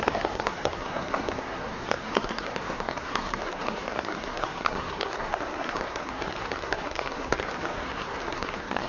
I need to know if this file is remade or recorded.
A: remade